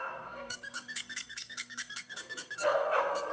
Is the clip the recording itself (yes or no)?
no